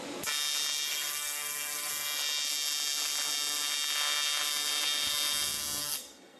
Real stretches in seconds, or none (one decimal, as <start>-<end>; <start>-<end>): 0.0-0.9; 1.9-5.8